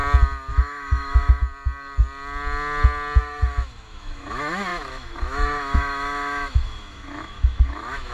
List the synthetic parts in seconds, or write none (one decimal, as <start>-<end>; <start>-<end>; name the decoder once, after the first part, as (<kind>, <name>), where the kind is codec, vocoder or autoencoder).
0.5-1.4 (autoencoder, DAC-VAE); 3.2-8.1